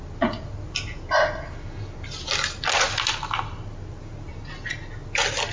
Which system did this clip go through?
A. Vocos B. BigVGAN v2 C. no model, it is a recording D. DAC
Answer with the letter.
C